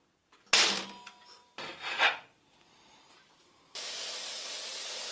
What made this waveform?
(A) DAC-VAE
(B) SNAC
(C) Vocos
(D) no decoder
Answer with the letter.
D